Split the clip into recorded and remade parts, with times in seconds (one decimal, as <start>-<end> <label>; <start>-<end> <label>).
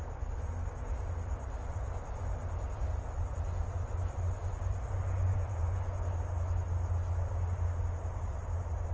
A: 0.0-5.3 recorded; 5.3-6.0 remade; 6.0-8.9 recorded